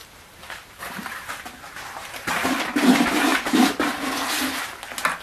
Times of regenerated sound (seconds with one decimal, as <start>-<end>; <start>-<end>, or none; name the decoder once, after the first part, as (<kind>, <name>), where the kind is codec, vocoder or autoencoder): 0.0-2.5 (vocoder, BigVGAN v2); 3.3-4.6